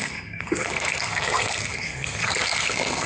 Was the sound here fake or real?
fake